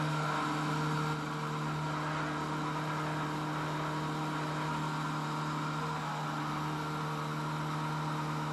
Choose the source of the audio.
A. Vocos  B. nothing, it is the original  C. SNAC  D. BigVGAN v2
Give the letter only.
B